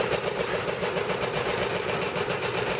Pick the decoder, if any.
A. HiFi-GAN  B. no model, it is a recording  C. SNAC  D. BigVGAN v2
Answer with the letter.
B